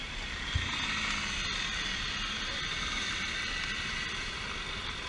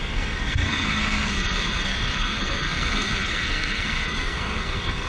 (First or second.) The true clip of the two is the first